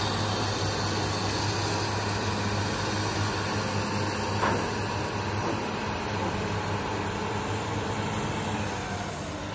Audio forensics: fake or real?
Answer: real